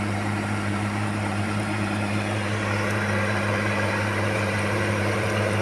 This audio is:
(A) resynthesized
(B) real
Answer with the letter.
A